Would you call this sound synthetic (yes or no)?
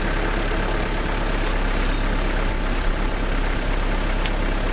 no